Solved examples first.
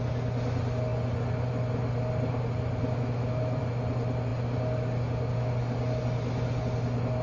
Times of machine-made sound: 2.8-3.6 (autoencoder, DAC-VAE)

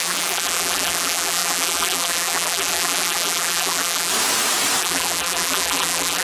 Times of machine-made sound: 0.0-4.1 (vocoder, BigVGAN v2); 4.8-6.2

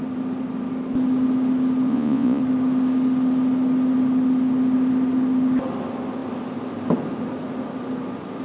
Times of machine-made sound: 1.9-2.4 (vocoder, Vocos)

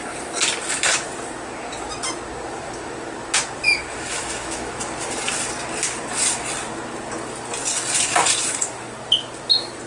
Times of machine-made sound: 3.9-4.8 (autoencoder, DAC-VAE)

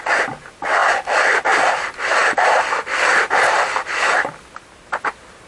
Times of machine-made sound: 0.0-5.5 (vocoder, BigVGAN v2)

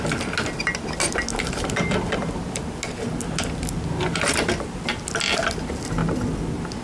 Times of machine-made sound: none

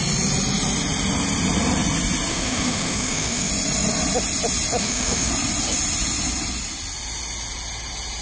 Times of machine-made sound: 2.3-3.5 (autoencoder, DAC-VAE); 4.8-5.3